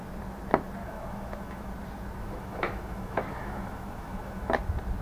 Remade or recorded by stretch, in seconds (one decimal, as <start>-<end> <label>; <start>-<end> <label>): 0.0-0.8 recorded; 0.8-1.7 remade; 1.7-2.2 recorded; 2.2-4.5 remade; 4.5-5.0 recorded